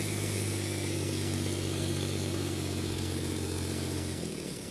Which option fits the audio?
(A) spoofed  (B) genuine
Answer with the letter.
A